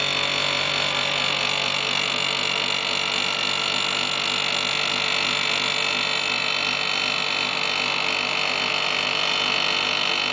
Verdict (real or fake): real